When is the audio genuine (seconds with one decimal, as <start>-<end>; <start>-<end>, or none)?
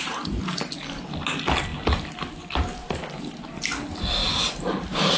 0.0-5.2